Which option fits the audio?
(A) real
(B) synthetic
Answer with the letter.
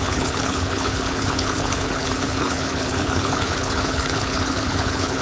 B